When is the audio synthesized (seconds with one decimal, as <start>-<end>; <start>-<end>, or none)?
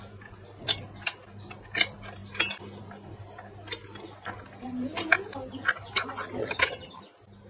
6.4-7.0